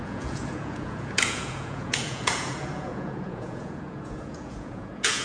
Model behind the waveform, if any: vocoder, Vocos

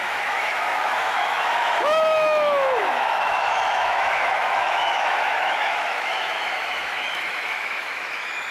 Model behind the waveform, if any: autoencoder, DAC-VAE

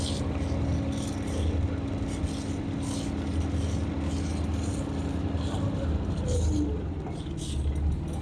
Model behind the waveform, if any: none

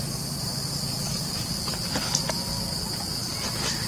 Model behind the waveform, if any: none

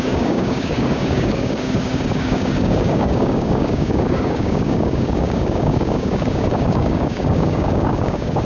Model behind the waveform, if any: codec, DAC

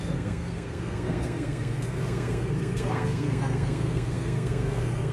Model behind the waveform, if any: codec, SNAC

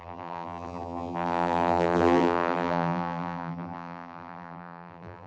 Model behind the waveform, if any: vocoder, BigVGAN v2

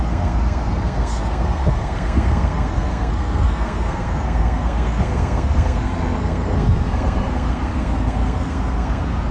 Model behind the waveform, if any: codec, SNAC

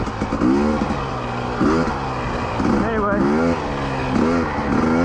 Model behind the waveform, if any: none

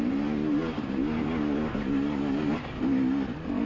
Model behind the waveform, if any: none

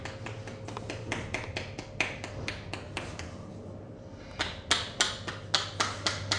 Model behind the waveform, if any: none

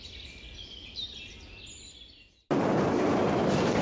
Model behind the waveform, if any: none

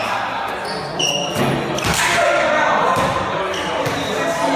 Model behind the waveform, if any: none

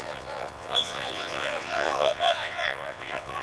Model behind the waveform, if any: vocoder, WaveNeXt